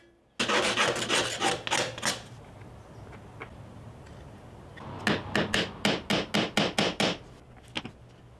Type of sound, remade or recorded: recorded